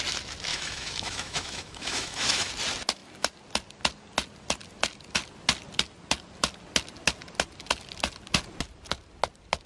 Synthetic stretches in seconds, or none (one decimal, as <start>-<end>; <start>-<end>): 0.5-2.5